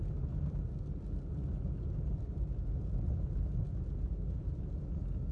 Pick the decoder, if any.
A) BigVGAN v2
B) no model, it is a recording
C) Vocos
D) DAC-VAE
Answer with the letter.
B